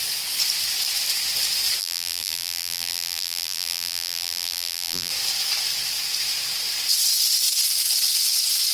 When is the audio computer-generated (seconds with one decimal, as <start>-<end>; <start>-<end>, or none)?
1.8-5.1